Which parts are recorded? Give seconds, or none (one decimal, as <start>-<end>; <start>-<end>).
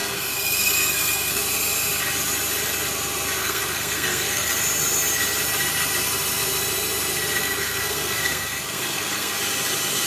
1.4-3.4; 4.5-7.4; 9.3-10.1